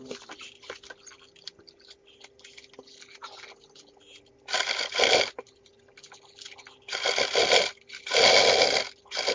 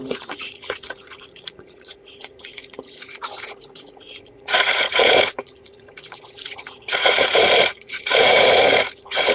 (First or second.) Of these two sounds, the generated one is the second